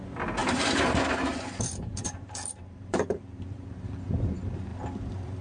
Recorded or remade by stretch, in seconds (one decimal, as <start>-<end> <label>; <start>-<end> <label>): 0.0-0.4 recorded; 0.4-3.6 remade; 3.6-4.7 recorded; 4.7-5.4 remade